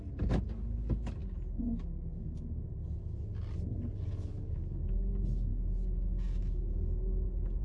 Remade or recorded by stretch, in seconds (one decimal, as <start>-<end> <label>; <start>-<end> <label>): 0.0-7.6 recorded